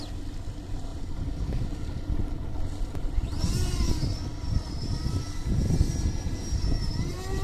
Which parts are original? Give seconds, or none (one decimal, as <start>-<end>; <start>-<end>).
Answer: 0.0-0.9; 3.9-7.4